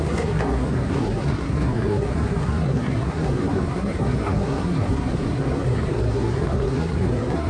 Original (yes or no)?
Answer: no